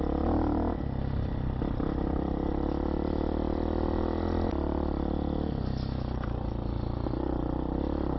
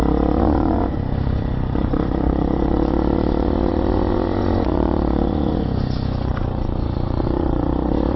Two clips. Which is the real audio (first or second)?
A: first